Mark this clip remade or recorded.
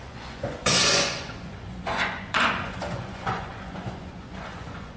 remade